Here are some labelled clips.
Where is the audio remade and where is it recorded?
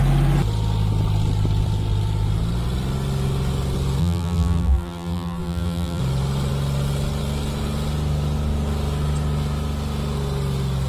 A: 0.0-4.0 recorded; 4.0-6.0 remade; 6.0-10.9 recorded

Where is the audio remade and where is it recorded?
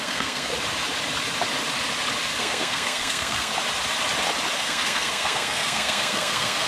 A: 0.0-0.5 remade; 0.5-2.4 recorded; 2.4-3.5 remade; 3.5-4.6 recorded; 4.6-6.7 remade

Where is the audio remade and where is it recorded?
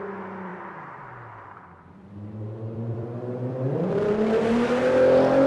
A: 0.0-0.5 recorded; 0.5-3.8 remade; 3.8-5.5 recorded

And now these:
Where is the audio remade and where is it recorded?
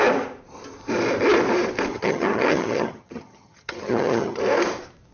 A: 0.0-1.9 recorded; 1.9-4.4 remade; 4.4-5.1 recorded